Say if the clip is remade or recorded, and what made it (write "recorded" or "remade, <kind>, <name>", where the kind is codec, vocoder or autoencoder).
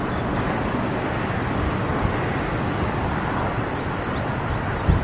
recorded